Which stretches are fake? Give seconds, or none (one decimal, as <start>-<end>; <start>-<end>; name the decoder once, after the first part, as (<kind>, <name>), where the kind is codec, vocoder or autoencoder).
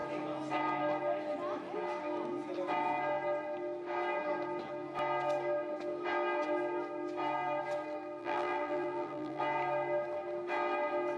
8.2-9.4 (vocoder, BigVGAN v2)